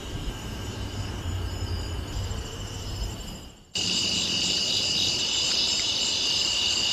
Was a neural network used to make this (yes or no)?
yes